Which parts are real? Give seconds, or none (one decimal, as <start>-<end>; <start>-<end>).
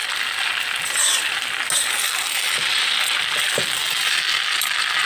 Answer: 0.0-5.1